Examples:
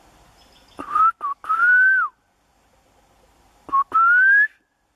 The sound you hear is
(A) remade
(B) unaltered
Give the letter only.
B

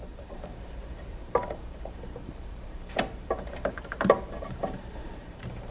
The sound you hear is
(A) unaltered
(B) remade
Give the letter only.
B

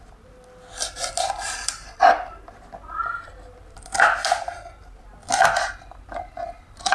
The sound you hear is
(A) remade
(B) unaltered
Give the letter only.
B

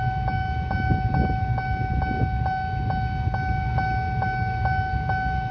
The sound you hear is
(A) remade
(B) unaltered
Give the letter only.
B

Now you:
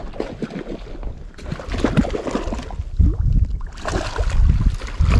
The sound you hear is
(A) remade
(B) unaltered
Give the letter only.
B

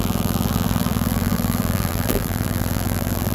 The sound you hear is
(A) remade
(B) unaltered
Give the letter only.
A